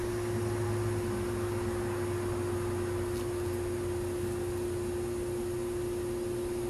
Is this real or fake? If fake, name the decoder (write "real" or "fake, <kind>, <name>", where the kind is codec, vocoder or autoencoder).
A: real